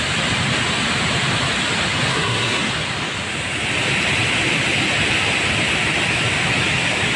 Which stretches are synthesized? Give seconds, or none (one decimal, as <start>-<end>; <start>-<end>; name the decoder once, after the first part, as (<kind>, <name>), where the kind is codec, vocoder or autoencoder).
2.1-2.7 (codec, SNAC)